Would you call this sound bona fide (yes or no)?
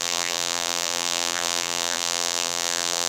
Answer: no